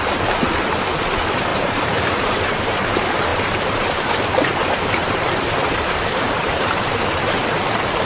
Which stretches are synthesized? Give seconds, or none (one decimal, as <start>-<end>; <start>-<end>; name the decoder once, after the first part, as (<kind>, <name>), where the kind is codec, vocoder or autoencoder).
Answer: 1.5-2.9 (vocoder, BigVGAN v2); 3.3-7.5